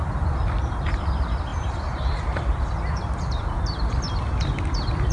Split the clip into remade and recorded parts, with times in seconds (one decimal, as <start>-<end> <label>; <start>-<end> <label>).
0.0-5.1 remade